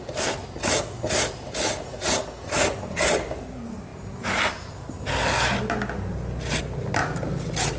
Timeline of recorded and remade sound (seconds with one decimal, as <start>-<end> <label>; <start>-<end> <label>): 0.0-7.8 recorded